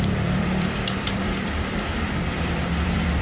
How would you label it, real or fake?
fake